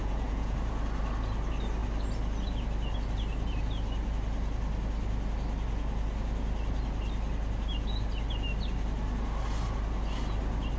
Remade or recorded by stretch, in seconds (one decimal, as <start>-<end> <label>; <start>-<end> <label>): 0.0-0.6 remade; 0.6-10.8 recorded